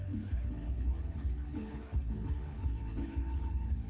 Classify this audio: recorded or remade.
remade